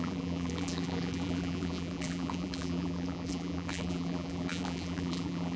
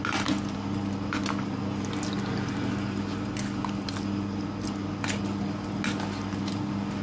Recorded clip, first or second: second